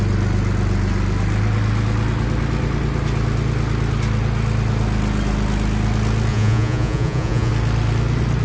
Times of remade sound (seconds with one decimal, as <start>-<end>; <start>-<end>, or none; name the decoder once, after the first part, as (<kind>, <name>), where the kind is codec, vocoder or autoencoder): 6.3-7.5 (vocoder, Vocos)